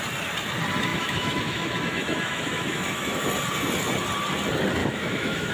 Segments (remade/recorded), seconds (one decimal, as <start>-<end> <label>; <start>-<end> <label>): 0.0-0.9 recorded; 0.9-3.3 remade; 3.3-4.8 recorded; 4.8-5.5 remade